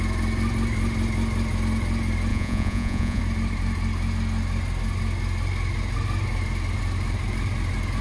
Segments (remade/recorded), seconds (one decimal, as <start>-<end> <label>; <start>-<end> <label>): 0.0-2.3 recorded; 2.3-3.2 remade; 3.2-8.0 recorded